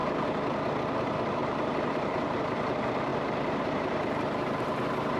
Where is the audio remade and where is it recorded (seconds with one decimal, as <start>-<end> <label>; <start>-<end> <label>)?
0.0-0.7 recorded; 0.7-5.2 remade